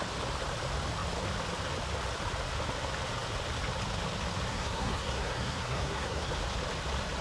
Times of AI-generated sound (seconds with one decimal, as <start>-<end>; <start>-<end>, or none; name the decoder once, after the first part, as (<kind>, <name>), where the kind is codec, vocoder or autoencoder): 4.5-6.3 (codec, SNAC)